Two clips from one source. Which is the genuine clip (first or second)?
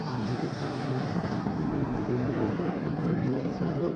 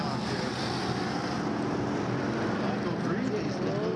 second